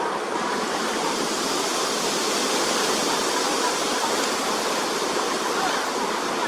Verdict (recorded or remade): recorded